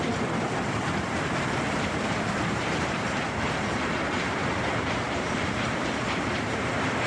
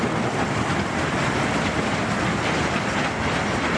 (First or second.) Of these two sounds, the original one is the second